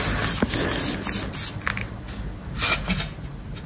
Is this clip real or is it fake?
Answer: real